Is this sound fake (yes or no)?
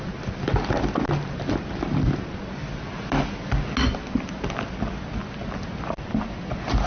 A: no